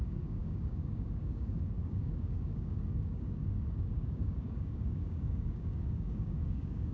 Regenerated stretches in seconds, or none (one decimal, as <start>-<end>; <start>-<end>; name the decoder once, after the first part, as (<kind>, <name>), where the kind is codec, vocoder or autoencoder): 0.0-6.9 (codec, DAC)